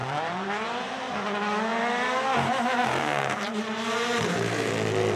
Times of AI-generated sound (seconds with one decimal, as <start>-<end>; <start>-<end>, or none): 0.0-1.1; 1.7-4.7